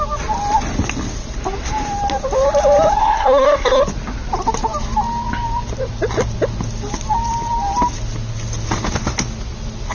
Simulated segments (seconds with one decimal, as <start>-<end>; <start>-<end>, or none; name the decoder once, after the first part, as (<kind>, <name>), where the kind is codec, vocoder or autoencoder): 3.0-3.8 (codec, SNAC)